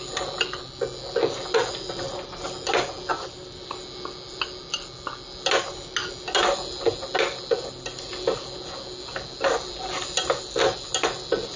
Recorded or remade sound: recorded